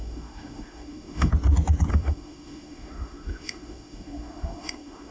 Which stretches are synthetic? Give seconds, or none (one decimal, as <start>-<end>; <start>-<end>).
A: 0.0-1.3; 1.9-5.1